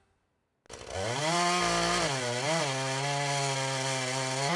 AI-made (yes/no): no